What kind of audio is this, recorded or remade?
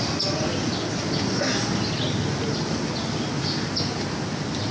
recorded